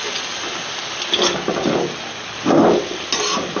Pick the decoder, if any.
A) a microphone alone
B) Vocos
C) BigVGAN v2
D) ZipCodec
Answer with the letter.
A